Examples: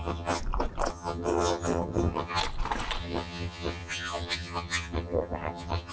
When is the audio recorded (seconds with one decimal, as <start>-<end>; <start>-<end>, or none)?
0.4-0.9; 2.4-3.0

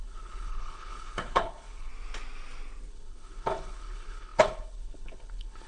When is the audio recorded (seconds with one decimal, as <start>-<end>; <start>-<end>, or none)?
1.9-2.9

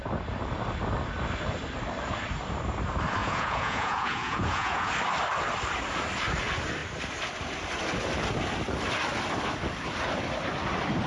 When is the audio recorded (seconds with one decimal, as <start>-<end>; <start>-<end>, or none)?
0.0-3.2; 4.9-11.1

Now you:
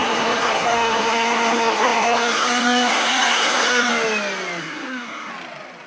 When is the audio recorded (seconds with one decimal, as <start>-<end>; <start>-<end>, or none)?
3.9-4.6; 5.3-5.9